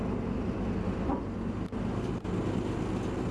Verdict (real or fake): real